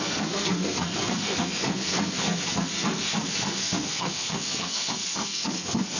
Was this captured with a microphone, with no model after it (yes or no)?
no